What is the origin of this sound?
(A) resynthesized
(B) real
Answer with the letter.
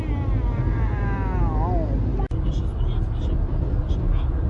B